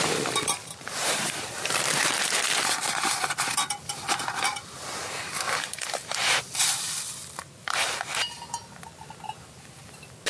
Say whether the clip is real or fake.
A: fake